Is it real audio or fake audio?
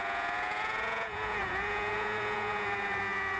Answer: fake